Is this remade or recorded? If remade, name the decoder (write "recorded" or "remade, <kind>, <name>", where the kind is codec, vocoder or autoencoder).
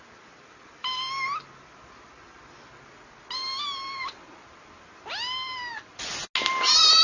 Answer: recorded